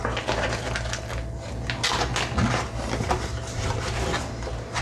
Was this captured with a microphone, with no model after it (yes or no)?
yes